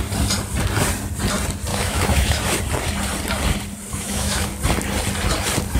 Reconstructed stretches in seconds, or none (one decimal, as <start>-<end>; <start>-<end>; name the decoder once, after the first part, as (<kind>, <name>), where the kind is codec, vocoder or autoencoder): 1.7-2.4 (autoencoder, DAC-VAE); 3.9-4.5